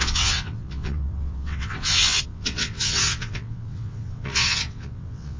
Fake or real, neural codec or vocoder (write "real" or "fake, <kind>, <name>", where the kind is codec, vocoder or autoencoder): fake, vocoder, WaveNeXt